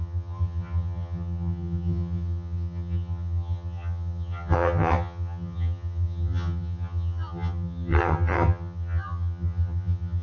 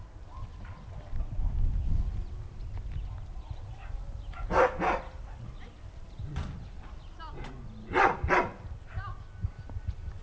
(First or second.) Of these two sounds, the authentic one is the second